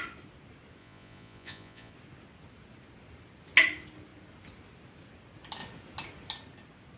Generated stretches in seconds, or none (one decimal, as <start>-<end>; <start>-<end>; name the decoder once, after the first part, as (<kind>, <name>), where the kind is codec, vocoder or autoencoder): 0.8-1.9 (vocoder, Vocos)